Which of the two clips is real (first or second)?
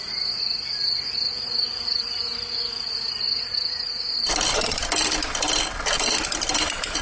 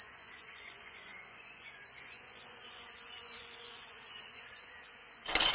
first